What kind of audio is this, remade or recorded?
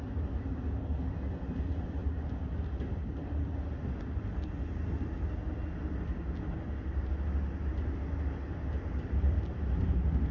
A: recorded